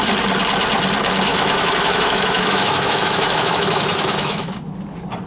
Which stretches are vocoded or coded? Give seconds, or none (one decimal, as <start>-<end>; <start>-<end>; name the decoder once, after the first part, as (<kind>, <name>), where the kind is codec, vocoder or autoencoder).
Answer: 1.3-4.5 (autoencoder, DAC-VAE)